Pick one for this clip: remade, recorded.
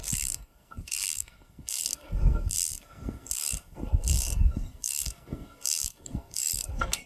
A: remade